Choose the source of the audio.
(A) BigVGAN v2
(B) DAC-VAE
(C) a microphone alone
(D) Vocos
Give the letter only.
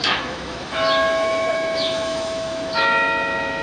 B